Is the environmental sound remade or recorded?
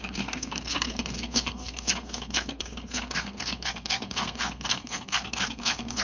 remade